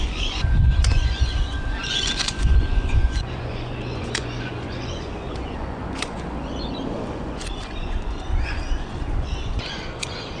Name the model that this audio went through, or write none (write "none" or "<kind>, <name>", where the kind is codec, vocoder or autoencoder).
vocoder, Vocos